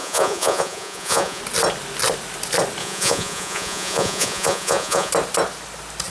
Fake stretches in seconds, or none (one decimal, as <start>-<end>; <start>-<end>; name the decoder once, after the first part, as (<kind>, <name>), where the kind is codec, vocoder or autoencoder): 0.0-1.4 (vocoder, Vocos); 2.8-5.1